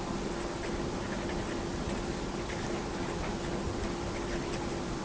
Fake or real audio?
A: real